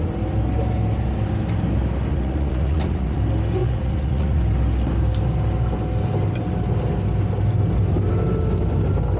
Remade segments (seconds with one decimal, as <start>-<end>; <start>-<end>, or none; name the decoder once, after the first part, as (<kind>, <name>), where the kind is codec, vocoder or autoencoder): 2.1-3.2 (vocoder, Vocos); 3.6-4.4